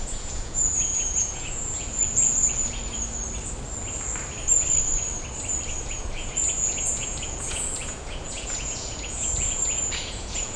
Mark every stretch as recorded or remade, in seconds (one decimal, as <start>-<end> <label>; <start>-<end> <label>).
0.0-2.8 remade; 2.8-5.8 recorded; 5.8-10.6 remade